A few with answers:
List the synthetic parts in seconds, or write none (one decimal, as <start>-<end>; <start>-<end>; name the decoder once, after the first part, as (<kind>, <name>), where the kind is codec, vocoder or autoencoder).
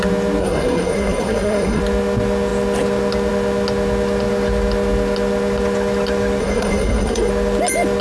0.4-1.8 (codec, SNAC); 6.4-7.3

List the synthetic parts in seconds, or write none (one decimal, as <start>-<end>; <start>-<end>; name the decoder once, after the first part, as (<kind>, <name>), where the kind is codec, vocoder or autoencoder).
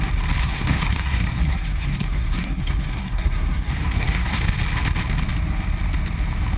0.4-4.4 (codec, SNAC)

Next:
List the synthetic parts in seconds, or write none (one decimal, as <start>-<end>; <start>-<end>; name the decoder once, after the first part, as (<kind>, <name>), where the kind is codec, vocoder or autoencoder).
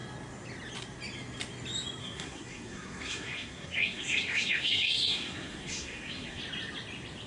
2.0-6.4 (codec, SNAC)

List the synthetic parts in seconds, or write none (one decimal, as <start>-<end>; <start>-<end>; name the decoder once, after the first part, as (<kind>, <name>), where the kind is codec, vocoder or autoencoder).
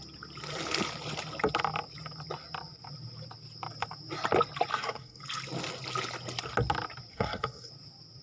4.7-5.2 (codec, SNAC); 7.1-7.7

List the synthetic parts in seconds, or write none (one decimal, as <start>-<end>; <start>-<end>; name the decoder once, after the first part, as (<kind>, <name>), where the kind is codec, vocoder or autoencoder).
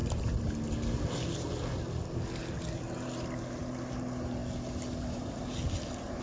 none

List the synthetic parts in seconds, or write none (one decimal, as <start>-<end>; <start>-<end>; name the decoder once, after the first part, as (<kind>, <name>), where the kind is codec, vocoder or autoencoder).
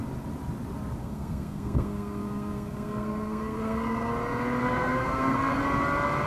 1.0-4.1 (codec, SNAC); 4.6-5.6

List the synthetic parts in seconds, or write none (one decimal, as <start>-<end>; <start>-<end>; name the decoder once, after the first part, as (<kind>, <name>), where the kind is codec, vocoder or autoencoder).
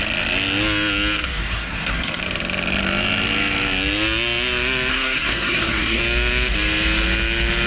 1.4-2.2 (codec, SNAC); 4.9-6.0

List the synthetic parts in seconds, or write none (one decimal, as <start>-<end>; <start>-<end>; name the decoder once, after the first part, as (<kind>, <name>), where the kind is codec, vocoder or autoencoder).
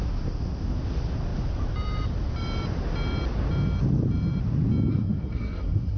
4.9-6.0 (codec, SNAC)